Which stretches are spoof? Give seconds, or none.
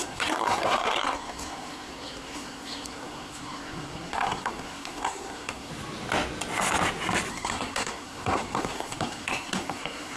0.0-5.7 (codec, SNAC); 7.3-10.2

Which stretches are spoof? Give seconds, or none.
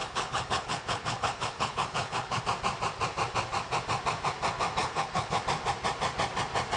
0.0-2.4 (codec, HILCodec); 4.8-5.4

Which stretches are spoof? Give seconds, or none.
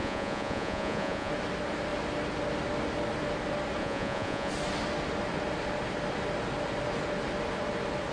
0.0-1.3 (vocoder, Vocos); 3.8-4.5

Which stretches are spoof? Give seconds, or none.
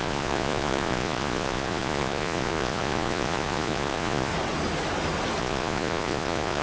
0.0-4.3 (vocoder, Vocos); 5.4-6.6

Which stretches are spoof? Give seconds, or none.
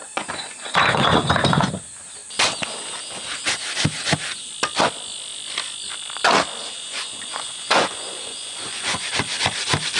0.0-1.7 (vocoder, Vocos); 6.6-9.1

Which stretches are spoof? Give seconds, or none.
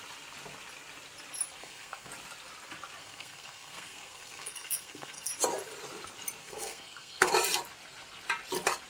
1.6-2.1 (codec, SNAC); 3.0-5.3; 6.4-7.3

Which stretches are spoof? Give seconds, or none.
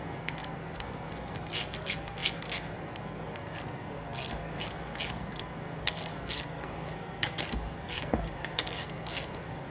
0.0-9.7 (codec, SNAC)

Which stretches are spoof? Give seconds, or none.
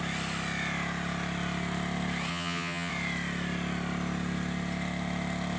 2.3-2.9 (vocoder, HiFi-GAN)